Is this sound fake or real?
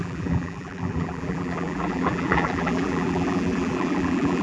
fake